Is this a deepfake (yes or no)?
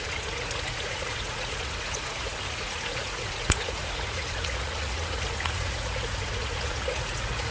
yes